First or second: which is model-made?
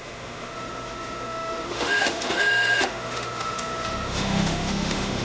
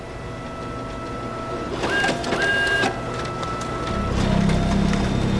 first